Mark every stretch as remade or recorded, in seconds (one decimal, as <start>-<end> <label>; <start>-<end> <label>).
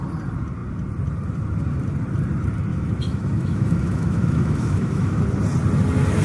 0.0-2.7 recorded; 2.7-5.2 remade; 5.2-6.2 recorded